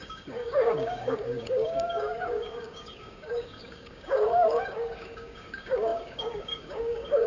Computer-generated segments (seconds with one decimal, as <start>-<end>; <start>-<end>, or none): 0.0-7.3